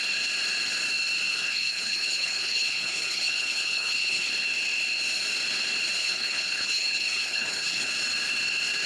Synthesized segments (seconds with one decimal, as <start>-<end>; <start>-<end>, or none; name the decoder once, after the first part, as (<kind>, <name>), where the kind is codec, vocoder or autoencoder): 1.3-4.3 (codec, HILCodec); 6.0-7.9